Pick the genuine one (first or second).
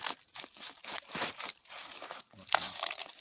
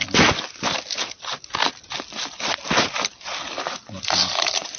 second